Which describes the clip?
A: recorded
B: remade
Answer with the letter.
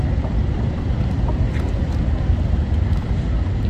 A